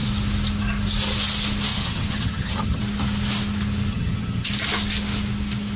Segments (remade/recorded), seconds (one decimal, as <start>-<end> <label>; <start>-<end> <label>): 0.0-1.7 recorded; 1.7-2.8 remade; 2.8-3.9 recorded; 3.9-4.5 remade; 4.5-5.8 recorded